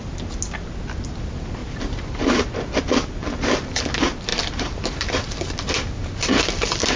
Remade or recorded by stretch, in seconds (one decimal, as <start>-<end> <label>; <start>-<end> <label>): 0.0-1.6 recorded; 1.6-2.5 remade; 2.5-4.3 recorded; 4.3-6.4 remade; 6.4-7.0 recorded